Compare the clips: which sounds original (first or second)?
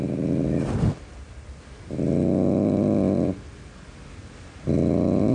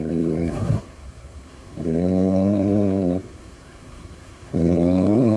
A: first